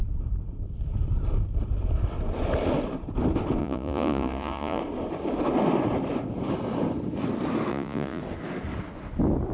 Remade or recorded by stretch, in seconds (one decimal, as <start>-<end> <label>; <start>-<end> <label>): 0.0-3.6 recorded; 3.6-4.8 remade; 4.8-7.7 recorded; 7.7-8.2 remade; 8.2-9.5 recorded